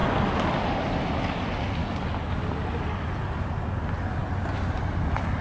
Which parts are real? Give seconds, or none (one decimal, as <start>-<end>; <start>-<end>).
0.0-5.4